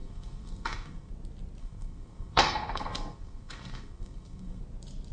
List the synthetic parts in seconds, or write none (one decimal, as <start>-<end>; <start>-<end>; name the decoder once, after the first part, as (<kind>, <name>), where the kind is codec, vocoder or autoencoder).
0.0-1.1 (codec, SNAC); 1.6-4.6